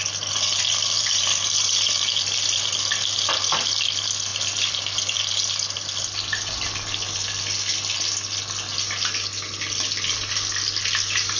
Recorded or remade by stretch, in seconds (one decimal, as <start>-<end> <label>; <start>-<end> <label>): 0.0-11.4 recorded